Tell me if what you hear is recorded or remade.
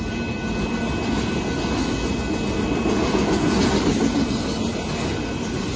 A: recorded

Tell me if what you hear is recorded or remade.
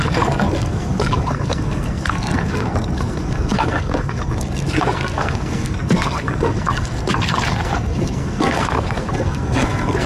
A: remade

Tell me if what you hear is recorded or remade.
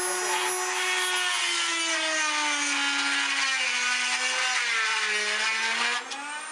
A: recorded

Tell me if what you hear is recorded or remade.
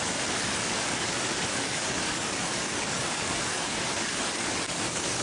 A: remade